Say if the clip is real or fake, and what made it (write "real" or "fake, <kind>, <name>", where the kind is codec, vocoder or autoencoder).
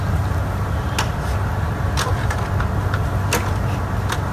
real